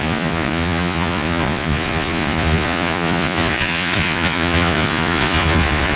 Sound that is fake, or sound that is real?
fake